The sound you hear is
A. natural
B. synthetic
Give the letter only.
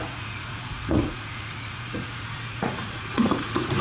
B